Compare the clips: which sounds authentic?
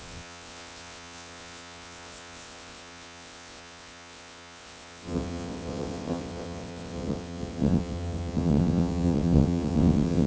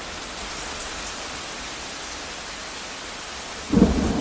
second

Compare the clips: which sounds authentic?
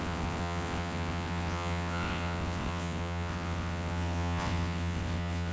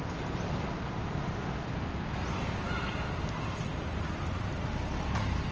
second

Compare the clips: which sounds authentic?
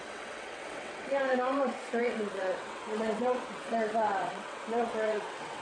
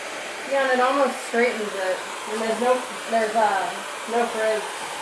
second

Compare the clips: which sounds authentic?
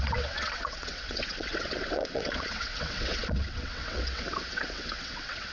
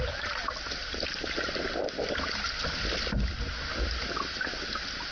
second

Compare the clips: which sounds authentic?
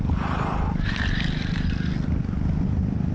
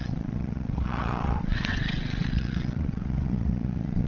first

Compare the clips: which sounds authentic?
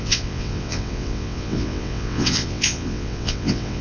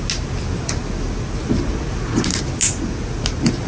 second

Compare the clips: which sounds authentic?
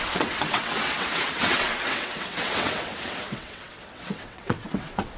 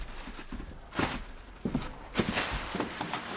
second